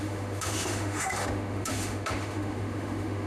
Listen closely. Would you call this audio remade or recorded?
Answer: remade